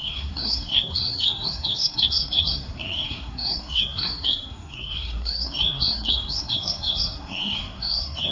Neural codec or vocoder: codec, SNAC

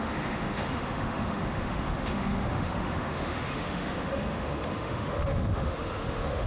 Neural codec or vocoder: autoencoder, DAC-VAE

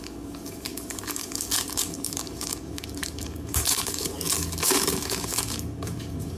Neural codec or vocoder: codec, DAC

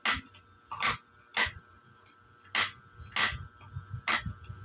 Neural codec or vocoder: none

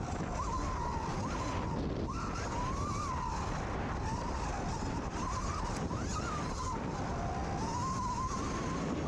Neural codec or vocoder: none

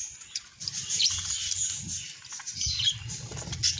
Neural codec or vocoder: none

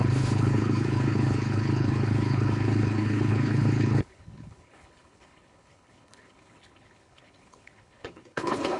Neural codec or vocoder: codec, HILCodec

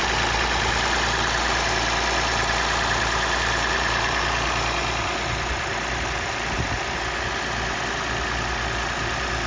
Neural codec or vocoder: none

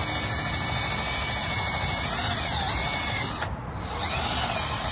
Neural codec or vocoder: none